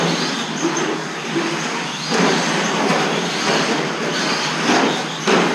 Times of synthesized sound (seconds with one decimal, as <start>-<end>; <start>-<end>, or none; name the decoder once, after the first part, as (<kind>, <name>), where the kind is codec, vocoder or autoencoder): none